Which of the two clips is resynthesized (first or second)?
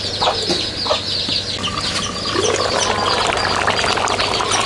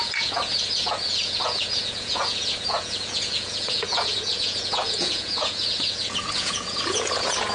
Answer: second